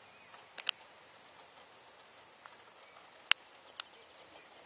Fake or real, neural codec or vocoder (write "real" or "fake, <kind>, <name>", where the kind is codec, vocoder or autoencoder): real